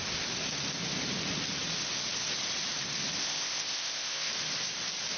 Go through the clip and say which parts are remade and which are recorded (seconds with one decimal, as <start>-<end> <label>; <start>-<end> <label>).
0.0-3.2 recorded; 3.2-4.3 remade; 4.3-5.2 recorded